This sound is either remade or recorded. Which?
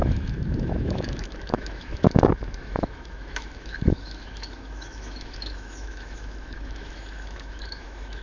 remade